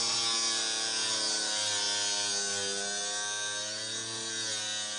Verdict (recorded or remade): recorded